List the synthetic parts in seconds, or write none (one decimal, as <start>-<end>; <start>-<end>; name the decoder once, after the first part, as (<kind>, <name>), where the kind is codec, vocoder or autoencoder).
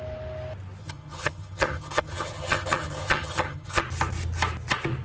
0.8-3.8 (vocoder, HiFi-GAN)